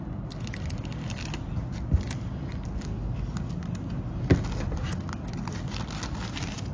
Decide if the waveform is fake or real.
real